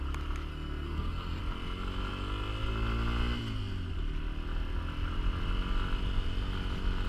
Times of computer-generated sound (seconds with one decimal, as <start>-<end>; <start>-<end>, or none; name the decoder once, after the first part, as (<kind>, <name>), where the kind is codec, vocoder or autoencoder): 0.5-1.4 (codec, SNAC)

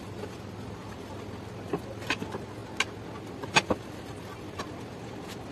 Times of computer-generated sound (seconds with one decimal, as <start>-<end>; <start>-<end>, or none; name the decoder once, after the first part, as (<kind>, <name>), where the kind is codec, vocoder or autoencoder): none

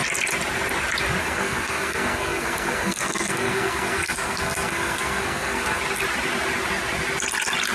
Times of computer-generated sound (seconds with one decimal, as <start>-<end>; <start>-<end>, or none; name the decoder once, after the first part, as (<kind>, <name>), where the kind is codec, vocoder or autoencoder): 1.2-5.8 (codec, SNAC)

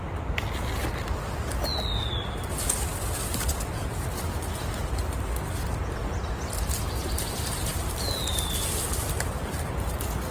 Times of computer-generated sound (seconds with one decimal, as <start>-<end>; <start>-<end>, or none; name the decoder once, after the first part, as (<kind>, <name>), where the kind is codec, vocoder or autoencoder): none

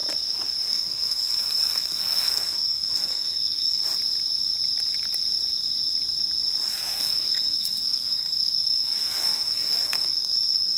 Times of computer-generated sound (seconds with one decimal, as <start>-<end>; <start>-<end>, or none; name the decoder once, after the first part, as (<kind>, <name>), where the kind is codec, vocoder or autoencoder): 0.7-3.8 (codec, SNAC); 6.7-10.8

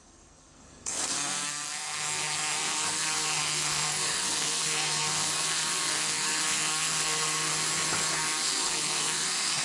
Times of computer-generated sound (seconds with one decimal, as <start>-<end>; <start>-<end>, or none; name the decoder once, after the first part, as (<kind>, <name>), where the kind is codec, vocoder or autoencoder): 0.0-7.5 (codec, SNAC); 8.1-9.6